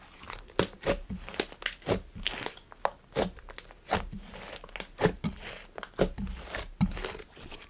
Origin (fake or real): real